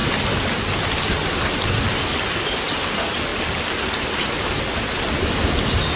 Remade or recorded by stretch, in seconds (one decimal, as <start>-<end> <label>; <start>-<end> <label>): 0.0-6.0 recorded